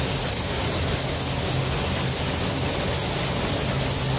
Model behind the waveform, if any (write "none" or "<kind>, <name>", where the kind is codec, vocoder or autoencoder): none